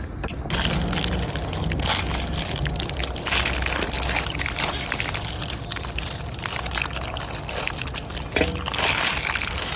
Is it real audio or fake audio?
real